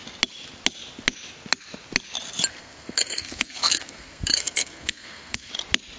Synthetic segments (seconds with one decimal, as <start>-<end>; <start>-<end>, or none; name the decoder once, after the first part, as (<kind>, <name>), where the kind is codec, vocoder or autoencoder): 2.5-5.5 (codec, SNAC)